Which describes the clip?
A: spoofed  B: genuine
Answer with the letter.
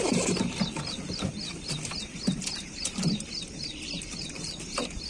B